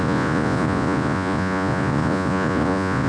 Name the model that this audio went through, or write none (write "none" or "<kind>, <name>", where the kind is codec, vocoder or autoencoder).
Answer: vocoder, Vocos